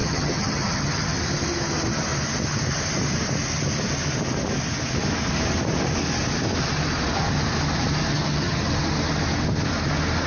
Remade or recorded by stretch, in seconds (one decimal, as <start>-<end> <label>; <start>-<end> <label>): 0.0-1.2 remade; 1.2-8.1 recorded; 8.1-8.6 remade; 8.6-10.3 recorded